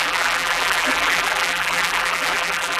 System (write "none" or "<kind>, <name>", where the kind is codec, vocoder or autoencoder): vocoder, BigVGAN v2